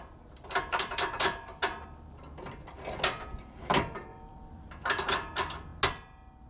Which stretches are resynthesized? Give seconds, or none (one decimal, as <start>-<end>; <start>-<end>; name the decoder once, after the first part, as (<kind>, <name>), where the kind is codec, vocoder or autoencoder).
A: 0.0-1.6 (vocoder, BigVGAN v2); 3.6-5.7